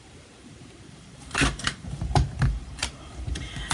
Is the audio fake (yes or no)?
yes